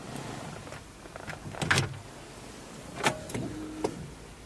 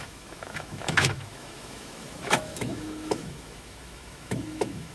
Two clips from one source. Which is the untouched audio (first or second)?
first